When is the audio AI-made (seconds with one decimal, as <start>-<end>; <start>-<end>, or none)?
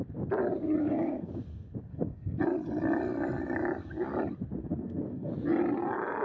0.8-1.3; 1.9-2.4; 4.6-5.3